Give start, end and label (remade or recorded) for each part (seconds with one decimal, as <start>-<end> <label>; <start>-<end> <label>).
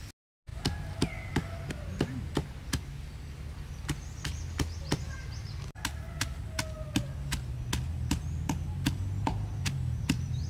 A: 0.0-10.5 recorded